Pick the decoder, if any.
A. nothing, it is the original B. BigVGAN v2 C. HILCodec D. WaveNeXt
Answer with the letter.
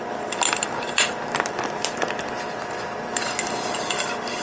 B